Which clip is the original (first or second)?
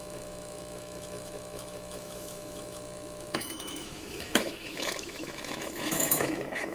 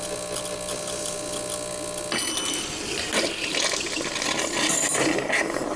second